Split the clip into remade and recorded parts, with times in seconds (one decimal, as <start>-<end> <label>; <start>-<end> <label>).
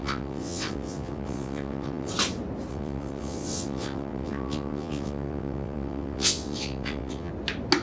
0.0-2.1 remade; 2.1-2.7 recorded; 2.7-7.3 remade; 7.3-7.8 recorded